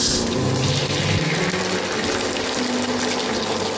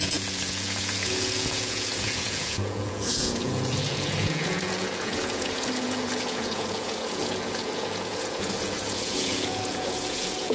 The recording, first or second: first